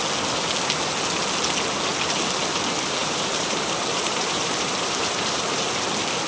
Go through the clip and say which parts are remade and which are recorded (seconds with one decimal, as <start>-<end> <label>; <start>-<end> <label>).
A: 0.0-3.0 recorded; 3.0-5.6 remade; 5.6-6.3 recorded